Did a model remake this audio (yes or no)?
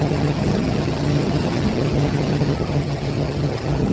yes